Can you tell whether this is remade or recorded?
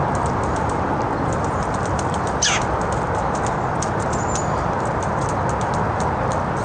recorded